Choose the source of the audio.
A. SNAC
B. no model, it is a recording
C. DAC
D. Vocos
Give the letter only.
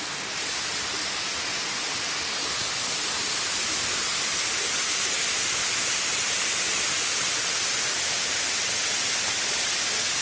B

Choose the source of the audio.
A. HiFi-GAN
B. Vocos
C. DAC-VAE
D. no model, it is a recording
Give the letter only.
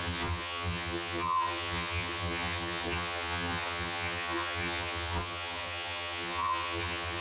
A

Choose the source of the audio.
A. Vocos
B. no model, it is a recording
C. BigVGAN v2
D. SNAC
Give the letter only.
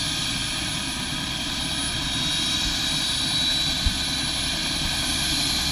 B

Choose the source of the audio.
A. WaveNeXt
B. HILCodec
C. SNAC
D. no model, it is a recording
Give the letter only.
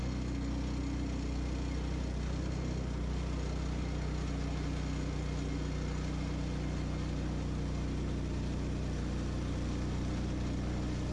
D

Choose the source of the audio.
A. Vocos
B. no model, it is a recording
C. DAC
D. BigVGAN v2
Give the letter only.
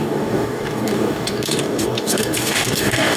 C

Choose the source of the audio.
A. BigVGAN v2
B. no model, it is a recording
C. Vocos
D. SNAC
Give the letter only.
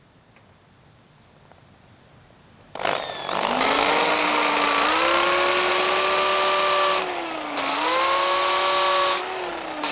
B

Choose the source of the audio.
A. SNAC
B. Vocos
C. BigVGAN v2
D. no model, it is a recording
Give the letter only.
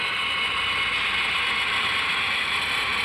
D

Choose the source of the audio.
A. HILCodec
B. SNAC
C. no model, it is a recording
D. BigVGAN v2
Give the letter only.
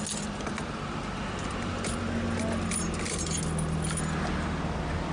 C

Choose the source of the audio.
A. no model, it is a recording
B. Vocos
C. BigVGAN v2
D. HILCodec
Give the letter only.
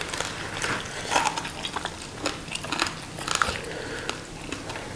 A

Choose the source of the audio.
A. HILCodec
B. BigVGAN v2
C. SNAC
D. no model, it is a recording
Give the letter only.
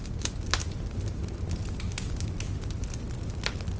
D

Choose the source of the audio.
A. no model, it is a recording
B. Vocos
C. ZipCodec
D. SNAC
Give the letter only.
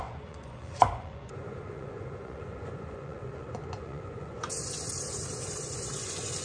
B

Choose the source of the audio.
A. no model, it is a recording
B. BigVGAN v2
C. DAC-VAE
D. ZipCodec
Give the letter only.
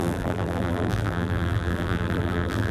B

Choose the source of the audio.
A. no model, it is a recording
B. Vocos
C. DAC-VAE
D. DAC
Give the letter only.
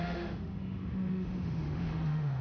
C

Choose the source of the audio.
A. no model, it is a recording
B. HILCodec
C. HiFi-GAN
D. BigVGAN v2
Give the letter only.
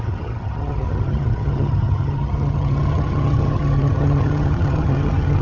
C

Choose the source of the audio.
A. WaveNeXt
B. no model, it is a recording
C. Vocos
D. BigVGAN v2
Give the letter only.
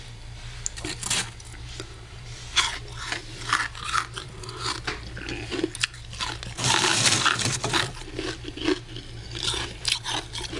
B